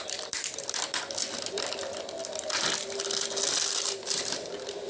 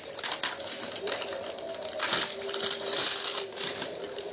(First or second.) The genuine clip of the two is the second